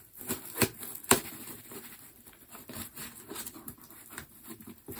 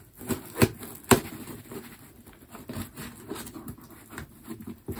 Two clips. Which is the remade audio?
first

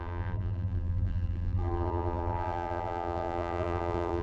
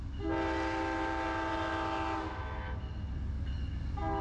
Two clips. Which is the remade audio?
first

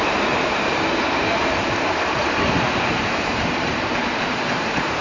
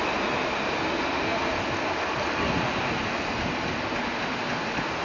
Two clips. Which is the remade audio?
first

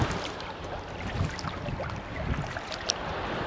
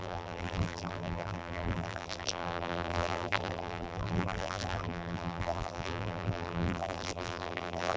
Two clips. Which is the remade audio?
second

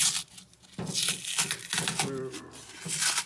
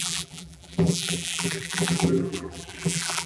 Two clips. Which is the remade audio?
second